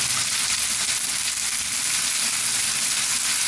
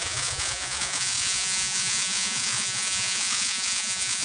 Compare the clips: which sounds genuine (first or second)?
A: first